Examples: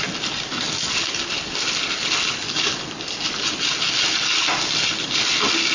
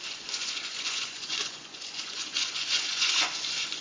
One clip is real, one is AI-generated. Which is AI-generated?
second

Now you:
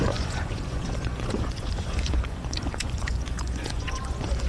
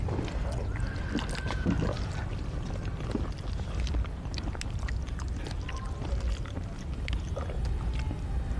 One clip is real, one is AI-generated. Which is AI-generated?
first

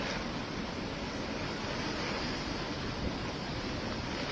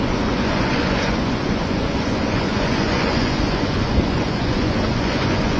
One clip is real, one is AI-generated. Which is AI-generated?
second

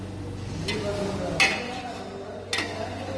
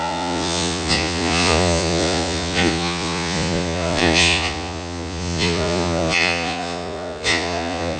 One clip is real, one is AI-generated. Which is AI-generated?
second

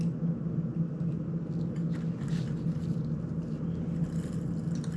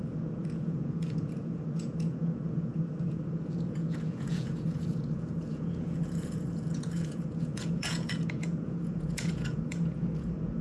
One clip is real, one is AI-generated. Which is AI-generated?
second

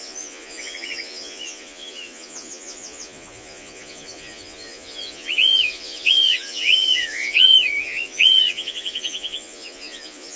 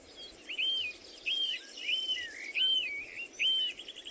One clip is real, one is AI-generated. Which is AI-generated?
first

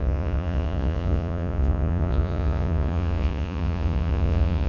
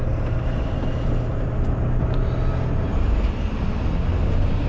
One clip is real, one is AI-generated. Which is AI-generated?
first